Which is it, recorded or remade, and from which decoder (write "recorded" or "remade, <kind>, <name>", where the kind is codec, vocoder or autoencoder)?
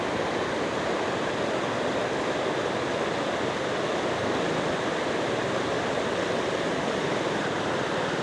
recorded